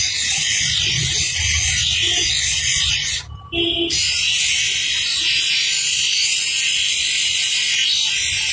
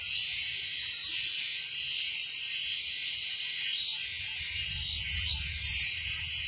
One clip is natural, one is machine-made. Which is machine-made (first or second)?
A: second